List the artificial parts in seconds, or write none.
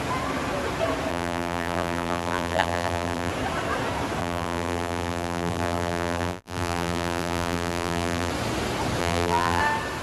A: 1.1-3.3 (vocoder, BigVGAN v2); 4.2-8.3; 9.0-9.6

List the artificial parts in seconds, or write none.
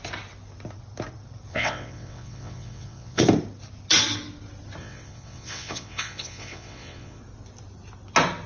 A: 1.5-3.2 (vocoder, WaveNeXt); 4.8-7.2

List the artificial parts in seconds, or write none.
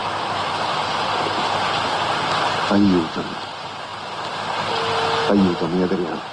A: 0.0-0.8 (autoencoder, DAC-VAE)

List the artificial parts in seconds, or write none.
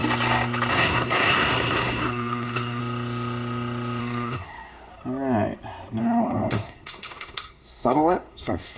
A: 0.7-2.8 (codec, SNAC); 4.0-4.9; 6.0-8.8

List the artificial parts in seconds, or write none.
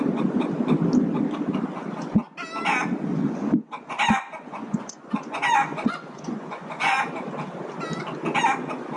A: 3.1-7.1 (vocoder, Vocos)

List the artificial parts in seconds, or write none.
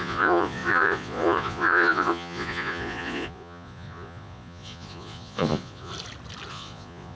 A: 0.0-5.9 (vocoder, Vocos); 6.5-7.1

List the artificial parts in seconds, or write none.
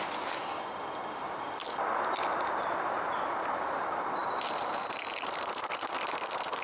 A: none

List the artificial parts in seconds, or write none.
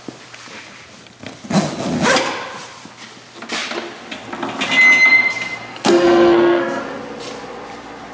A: 5.7-6.8 (codec, SNAC)